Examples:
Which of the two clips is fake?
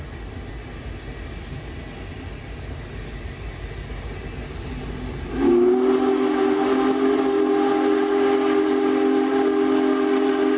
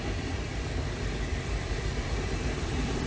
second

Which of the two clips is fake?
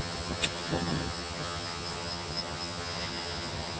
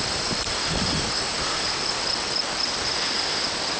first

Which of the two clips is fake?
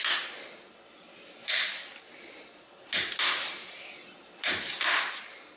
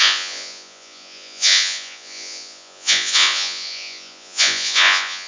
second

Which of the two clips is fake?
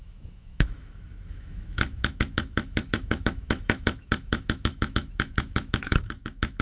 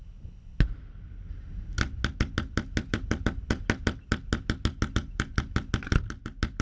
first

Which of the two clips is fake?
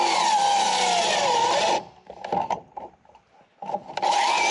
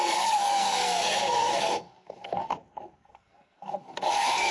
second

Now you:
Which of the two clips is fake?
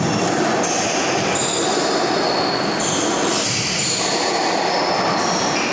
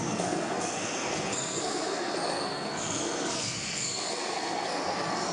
second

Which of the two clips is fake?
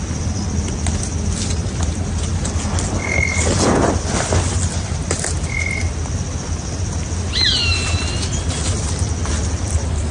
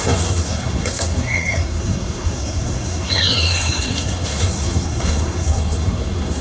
second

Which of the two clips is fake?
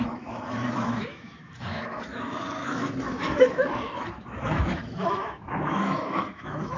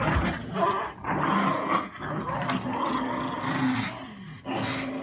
first